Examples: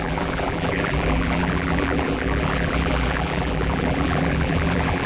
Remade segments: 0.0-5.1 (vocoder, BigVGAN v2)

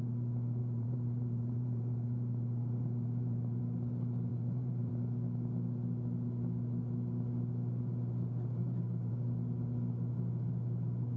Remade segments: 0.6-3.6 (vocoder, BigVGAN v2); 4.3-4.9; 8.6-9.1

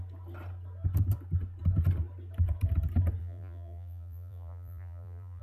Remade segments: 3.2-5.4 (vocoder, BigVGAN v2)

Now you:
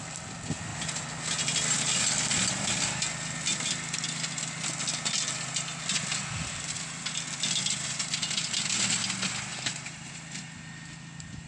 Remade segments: 9.5-10.1 (vocoder, BigVGAN v2)